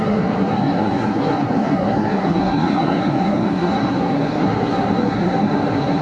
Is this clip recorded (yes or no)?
no